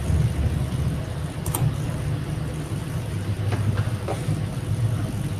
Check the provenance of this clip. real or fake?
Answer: real